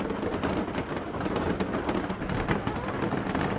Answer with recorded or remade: recorded